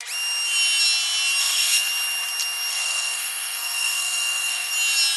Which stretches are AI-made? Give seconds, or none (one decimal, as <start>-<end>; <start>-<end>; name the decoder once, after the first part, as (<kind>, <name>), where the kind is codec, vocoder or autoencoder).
1.4-1.9 (codec, SNAC); 2.7-4.7